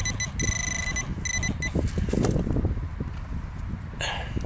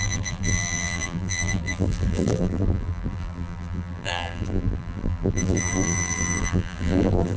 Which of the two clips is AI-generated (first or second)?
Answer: second